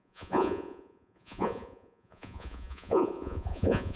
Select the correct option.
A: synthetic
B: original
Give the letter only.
A